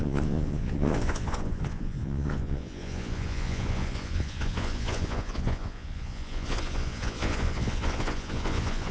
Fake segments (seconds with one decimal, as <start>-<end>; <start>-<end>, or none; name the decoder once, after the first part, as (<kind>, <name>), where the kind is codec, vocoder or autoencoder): 0.0-8.9 (vocoder, Vocos)